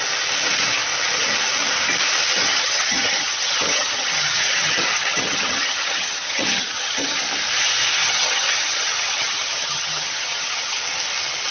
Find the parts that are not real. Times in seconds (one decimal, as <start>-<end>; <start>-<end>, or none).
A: 2.4-7.2; 8.0-10.8